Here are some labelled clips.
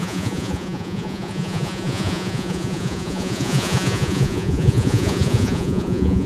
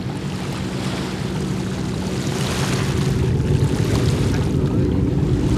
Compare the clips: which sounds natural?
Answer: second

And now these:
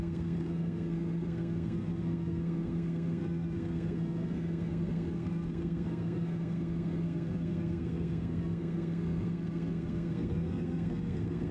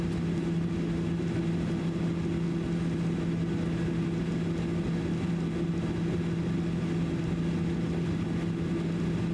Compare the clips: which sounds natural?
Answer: second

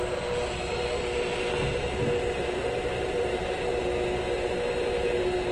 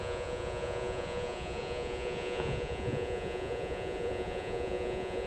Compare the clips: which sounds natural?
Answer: first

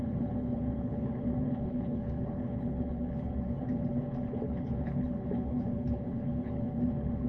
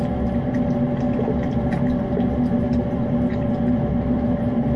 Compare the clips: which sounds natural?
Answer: second